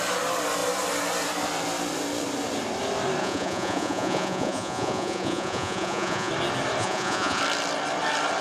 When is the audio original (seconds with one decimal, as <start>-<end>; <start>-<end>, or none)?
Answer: 0.0-3.2; 6.3-6.8; 7.4-8.4